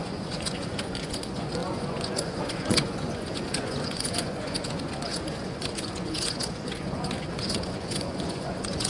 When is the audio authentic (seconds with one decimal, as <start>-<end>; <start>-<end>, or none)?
none